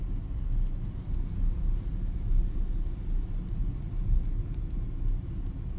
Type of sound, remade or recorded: recorded